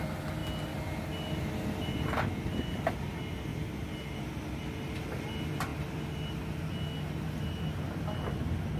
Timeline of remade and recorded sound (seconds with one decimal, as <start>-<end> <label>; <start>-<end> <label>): 0.0-0.4 recorded; 0.4-2.9 remade; 2.9-3.5 recorded; 3.5-4.3 remade; 4.3-8.8 recorded